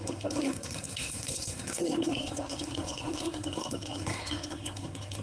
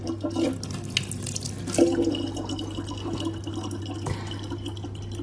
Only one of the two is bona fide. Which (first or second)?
second